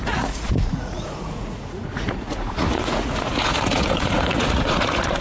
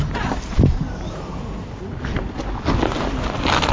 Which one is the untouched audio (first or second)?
second